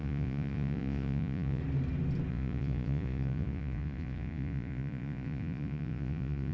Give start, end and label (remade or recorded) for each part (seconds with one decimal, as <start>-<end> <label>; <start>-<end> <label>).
0.0-1.6 remade; 1.6-2.3 recorded; 2.3-6.5 remade